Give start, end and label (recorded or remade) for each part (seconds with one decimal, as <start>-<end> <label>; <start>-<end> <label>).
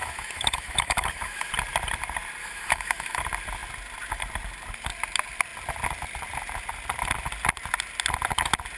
0.0-1.5 remade; 1.5-2.4 recorded; 2.4-3.2 remade; 3.2-8.8 recorded